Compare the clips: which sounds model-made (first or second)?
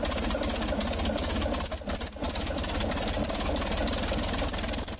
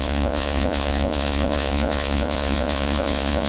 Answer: second